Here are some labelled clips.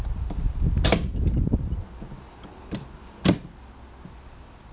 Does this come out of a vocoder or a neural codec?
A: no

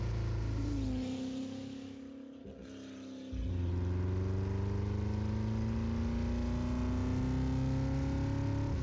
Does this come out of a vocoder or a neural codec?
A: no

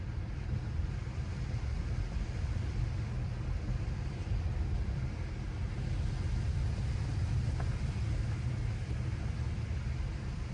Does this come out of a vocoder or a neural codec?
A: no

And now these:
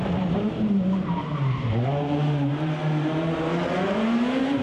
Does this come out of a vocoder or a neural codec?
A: yes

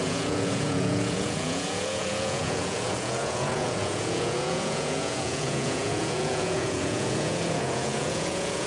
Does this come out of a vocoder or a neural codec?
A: yes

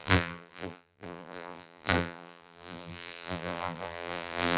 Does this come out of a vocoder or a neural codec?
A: yes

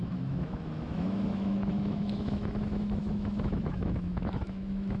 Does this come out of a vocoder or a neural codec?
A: yes